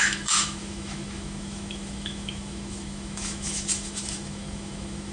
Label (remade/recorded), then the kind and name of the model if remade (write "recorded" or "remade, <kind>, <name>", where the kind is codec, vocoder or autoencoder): remade, autoencoder, DAC-VAE